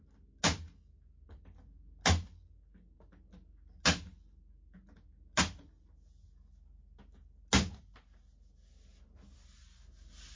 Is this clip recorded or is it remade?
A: recorded